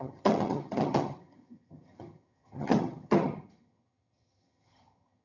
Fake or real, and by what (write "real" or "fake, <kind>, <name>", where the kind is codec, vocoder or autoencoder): fake, vocoder, HiFi-GAN